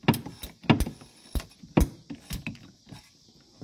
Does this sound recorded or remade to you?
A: recorded